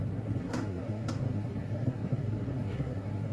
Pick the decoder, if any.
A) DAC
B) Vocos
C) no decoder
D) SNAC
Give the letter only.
D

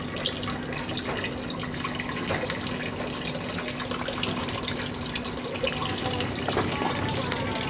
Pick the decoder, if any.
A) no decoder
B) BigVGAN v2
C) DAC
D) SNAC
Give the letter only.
A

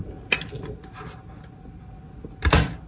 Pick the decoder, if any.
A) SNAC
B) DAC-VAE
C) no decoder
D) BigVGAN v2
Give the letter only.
C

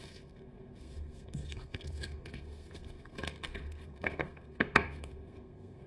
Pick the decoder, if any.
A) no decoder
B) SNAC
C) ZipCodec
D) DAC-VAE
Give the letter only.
B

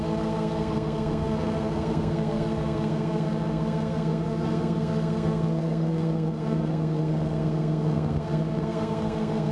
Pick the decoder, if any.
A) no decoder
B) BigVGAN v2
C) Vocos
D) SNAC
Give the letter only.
D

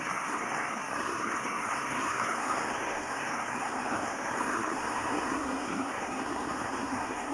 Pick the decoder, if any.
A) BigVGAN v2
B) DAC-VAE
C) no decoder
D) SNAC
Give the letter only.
D